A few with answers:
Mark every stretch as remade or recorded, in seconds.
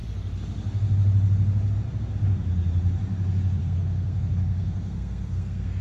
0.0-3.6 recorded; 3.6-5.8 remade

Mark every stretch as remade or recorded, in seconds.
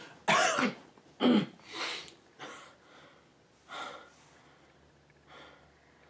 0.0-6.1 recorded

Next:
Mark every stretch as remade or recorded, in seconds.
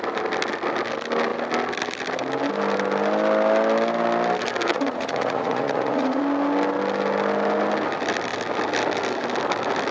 0.0-4.7 recorded; 4.7-6.2 remade; 6.2-9.9 recorded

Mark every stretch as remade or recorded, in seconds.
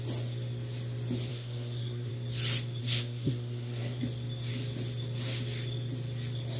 0.0-1.3 recorded; 1.3-2.1 remade; 2.1-2.8 recorded; 2.8-4.0 remade; 4.0-6.6 recorded